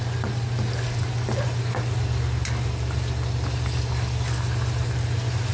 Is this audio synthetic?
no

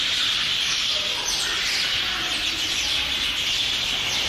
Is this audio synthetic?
no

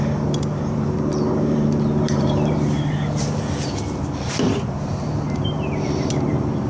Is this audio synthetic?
yes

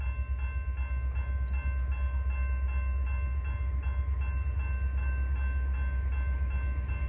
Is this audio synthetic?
no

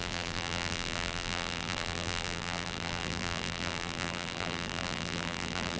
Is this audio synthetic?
yes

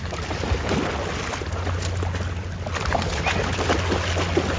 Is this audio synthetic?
no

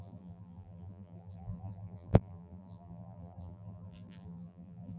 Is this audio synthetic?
yes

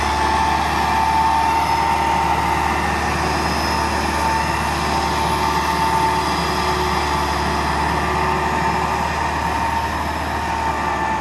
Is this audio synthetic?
no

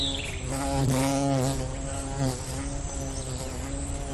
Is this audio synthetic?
no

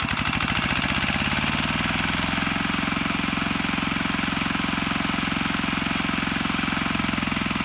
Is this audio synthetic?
no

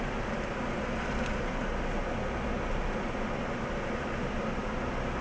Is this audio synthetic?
no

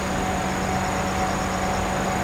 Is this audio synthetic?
no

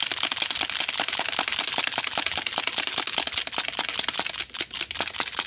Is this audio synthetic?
no